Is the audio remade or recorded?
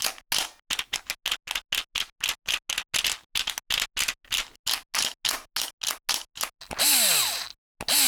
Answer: recorded